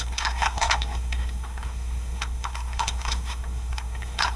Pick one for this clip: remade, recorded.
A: remade